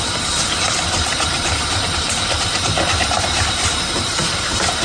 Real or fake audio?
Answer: fake